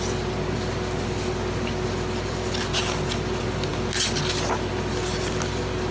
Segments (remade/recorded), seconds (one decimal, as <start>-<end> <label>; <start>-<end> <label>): 0.0-5.9 recorded